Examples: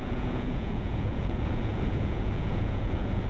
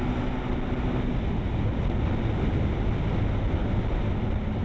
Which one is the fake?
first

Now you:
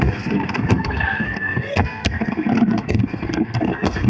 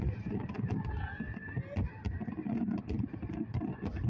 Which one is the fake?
first